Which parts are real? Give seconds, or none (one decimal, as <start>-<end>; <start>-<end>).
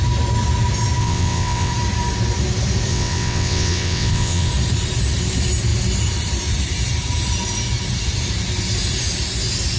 0.0-1.0; 1.7-2.9; 4.5-9.8